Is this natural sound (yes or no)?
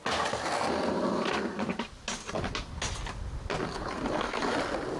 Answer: yes